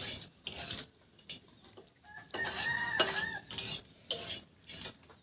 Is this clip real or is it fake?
real